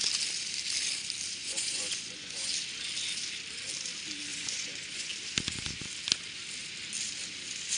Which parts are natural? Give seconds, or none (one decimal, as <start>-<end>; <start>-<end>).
0.0-1.4; 2.5-4.3; 5.1-7.8